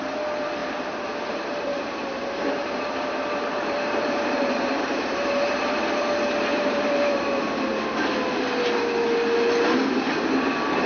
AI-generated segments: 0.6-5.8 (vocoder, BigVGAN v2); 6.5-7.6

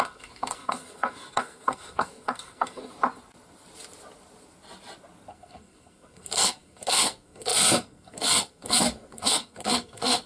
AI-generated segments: 0.0-2.9 (codec, SNAC); 5.3-10.3